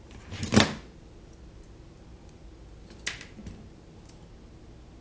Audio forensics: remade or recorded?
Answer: recorded